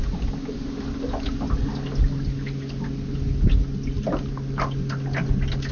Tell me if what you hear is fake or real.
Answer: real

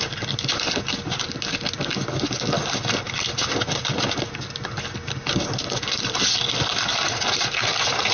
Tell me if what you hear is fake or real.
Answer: real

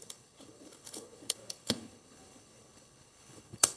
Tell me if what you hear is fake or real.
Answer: fake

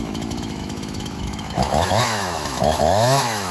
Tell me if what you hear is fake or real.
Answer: fake